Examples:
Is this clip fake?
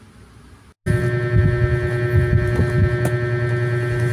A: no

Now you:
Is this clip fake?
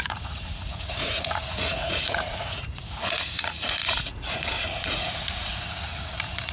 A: yes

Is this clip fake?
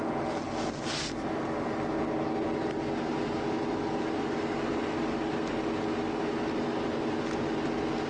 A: no